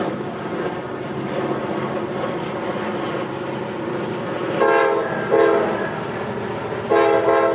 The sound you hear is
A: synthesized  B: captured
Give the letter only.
B